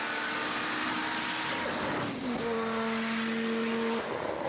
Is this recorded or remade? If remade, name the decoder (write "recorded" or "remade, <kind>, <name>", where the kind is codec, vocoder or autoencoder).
recorded